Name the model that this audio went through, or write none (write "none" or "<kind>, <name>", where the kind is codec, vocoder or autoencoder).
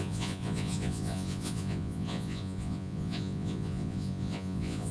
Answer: vocoder, Vocos